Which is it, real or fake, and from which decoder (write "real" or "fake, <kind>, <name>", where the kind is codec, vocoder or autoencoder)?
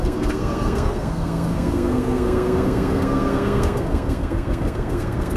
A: fake, codec, SNAC